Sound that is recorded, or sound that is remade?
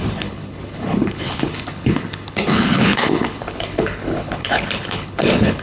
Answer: remade